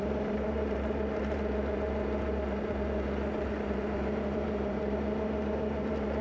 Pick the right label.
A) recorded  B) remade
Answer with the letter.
B